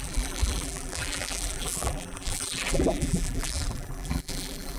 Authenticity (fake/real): fake